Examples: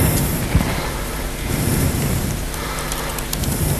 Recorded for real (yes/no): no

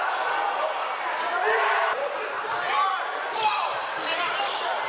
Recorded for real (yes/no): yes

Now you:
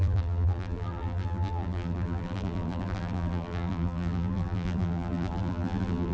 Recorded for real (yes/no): no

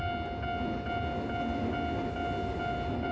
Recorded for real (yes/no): yes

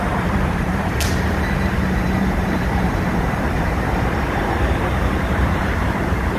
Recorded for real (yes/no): no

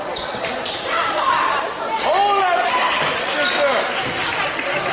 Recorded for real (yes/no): yes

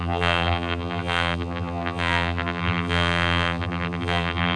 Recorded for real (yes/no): no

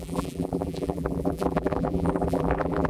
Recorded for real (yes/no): no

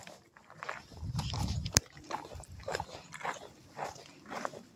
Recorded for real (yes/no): no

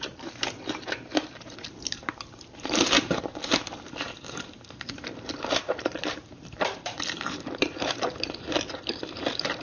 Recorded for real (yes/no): no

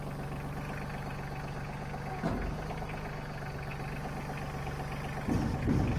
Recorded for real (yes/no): yes